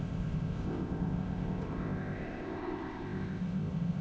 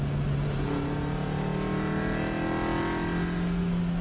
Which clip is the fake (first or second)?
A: first